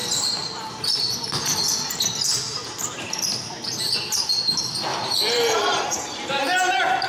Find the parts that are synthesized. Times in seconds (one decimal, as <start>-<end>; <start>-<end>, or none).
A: 0.0-0.8; 2.5-3.9; 4.9-6.3